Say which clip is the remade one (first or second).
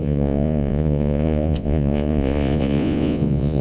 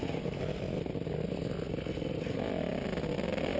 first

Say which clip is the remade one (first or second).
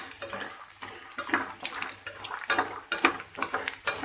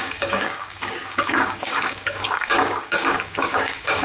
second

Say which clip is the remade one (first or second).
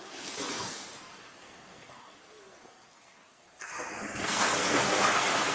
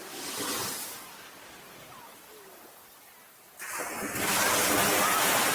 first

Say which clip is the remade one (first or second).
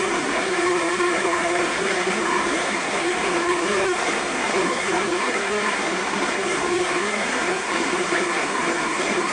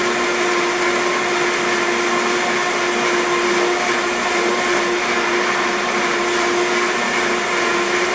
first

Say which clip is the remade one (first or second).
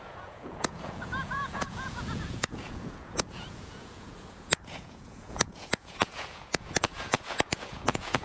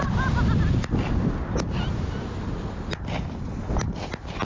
first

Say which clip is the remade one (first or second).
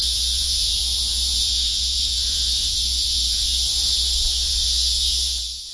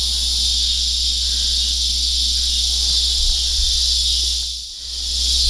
first